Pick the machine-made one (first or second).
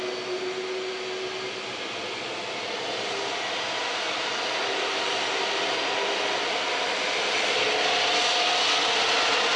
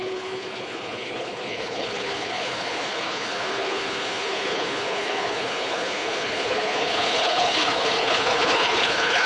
second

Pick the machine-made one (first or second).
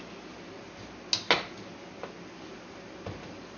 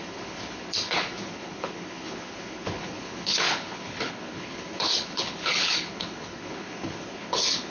second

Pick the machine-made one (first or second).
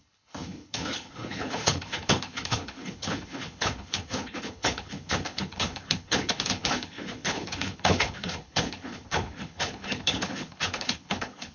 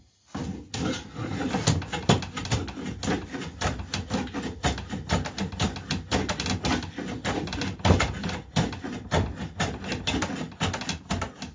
first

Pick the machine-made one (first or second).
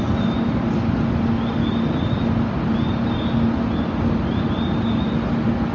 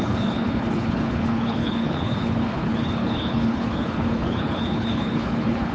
second